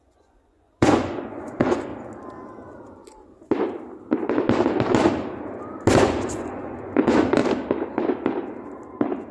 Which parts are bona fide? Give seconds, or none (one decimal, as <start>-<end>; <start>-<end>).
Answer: 1.9-6.0; 7.4-9.3